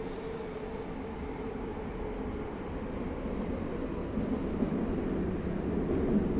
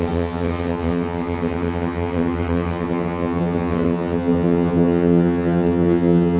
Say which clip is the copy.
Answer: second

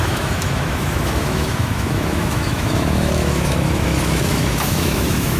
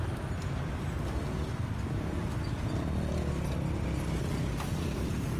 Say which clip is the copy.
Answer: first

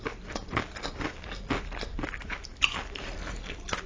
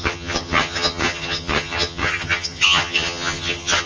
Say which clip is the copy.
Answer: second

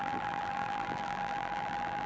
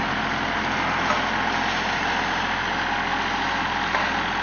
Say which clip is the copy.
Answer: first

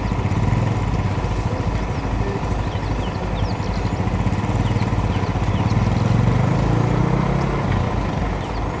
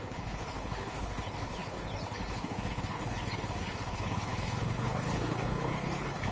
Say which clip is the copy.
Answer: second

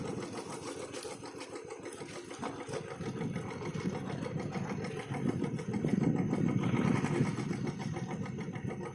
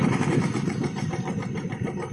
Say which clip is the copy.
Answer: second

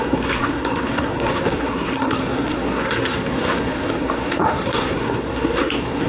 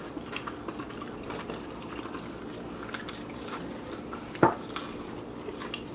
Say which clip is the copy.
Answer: first